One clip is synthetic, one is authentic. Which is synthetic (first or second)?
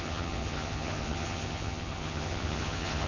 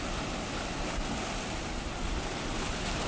first